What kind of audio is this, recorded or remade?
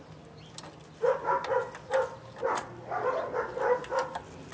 recorded